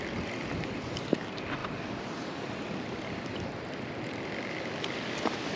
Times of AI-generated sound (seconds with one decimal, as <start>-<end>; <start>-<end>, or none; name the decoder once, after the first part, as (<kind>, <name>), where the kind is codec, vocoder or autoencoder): 1.6-5.0 (vocoder, BigVGAN v2)